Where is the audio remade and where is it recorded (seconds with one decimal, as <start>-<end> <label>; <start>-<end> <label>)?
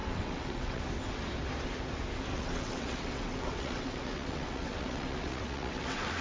0.0-0.8 remade; 0.8-2.3 recorded; 2.3-6.2 remade